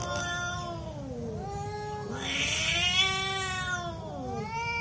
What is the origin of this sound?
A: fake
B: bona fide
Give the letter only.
B